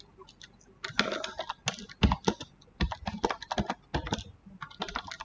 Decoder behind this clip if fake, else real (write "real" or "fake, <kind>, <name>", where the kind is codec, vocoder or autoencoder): real